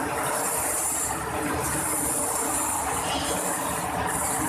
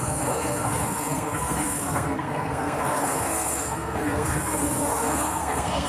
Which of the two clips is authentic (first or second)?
first